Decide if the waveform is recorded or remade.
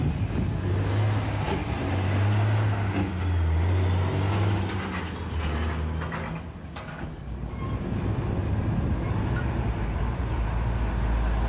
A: recorded